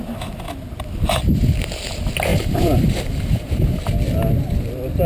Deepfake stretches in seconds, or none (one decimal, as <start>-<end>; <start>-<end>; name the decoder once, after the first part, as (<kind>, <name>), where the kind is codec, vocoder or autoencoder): 2.3-3.8 (vocoder, BigVGAN v2)